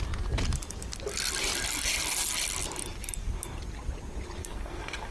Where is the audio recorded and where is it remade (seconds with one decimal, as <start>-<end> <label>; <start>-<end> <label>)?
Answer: 0.0-4.4 recorded; 4.4-5.1 remade